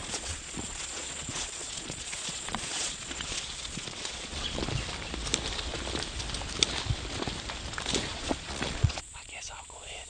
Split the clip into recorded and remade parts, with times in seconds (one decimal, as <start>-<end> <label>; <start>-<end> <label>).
0.0-4.6 remade; 4.6-8.1 recorded; 8.1-10.1 remade